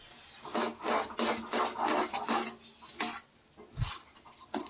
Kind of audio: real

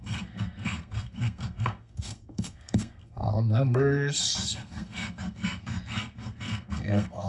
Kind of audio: fake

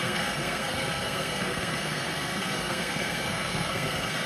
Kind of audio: fake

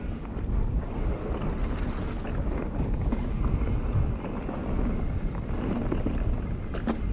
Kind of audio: real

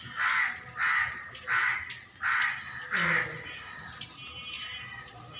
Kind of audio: real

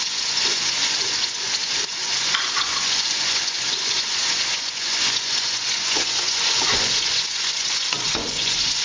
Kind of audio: fake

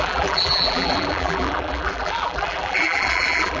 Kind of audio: fake